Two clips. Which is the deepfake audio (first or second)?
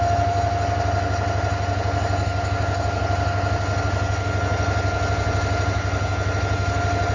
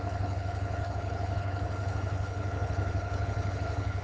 second